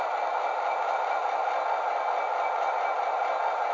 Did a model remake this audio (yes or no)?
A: no